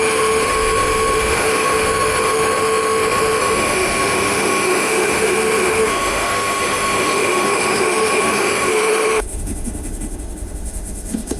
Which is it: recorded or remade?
remade